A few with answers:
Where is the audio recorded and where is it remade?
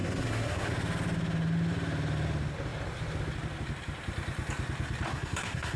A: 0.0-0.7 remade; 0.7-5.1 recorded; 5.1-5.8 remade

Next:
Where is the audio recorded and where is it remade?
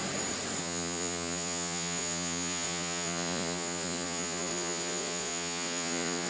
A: 0.0-0.6 recorded; 0.6-6.3 remade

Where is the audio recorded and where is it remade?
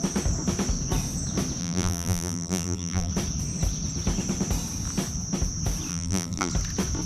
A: 0.0-1.6 recorded; 1.6-3.1 remade; 3.1-5.9 recorded; 5.9-6.5 remade; 6.5-7.1 recorded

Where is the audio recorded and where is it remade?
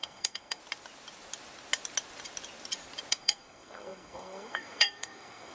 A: 0.0-0.6 remade; 0.6-3.1 recorded; 3.1-5.5 remade